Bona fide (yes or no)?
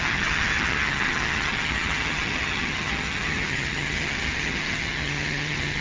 no